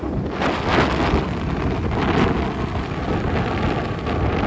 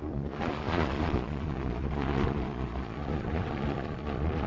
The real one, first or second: first